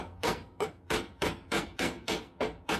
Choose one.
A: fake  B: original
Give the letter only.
A